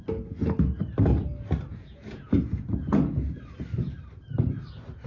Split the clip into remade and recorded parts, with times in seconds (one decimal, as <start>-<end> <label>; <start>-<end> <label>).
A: 0.0-1.7 recorded; 1.7-3.0 remade; 3.0-5.1 recorded

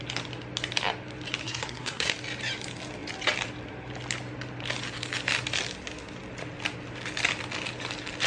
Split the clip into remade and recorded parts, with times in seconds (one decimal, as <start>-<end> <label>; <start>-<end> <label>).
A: 0.0-1.4 recorded; 1.4-2.1 remade; 2.1-8.3 recorded

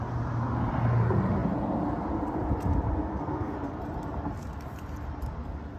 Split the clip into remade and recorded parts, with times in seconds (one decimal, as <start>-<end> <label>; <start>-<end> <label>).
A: 0.0-3.1 recorded; 3.1-3.8 remade; 3.8-5.8 recorded

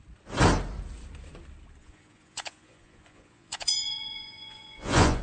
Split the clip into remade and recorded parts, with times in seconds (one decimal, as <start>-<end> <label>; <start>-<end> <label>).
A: 0.0-1.8 recorded; 1.8-5.2 remade

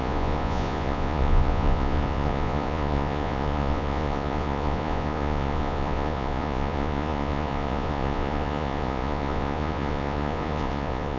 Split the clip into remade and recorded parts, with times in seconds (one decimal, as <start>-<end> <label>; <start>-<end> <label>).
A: 0.0-11.2 remade

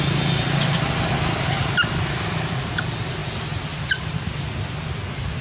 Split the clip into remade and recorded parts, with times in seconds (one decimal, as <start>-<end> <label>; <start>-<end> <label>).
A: 0.0-5.4 recorded